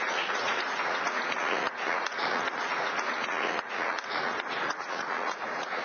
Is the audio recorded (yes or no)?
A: no